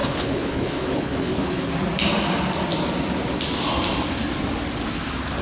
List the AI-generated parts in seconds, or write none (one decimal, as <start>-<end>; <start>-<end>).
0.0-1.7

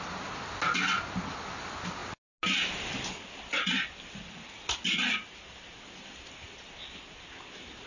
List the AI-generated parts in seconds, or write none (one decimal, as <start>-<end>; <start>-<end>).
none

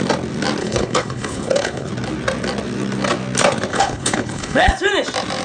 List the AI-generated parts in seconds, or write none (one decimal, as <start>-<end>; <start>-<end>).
0.6-1.9; 3.7-4.7

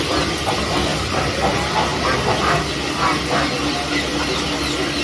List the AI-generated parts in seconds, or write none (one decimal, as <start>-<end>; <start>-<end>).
none

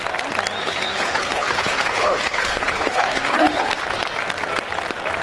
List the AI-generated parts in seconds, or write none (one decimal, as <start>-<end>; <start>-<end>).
0.6-3.7

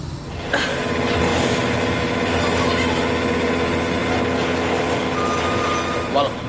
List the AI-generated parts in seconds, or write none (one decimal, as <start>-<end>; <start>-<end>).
none